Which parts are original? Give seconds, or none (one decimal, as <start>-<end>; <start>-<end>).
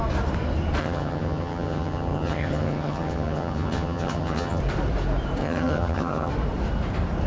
0.0-0.8; 4.6-5.4; 6.3-7.3